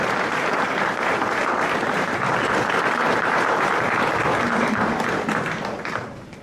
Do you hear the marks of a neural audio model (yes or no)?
yes